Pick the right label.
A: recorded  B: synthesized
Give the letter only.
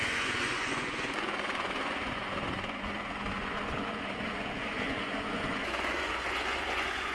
B